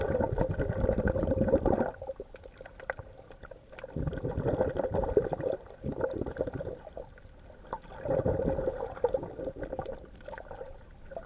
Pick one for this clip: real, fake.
real